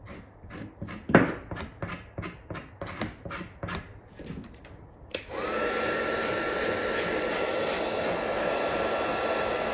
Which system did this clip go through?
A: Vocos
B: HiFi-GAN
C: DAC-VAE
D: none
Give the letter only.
D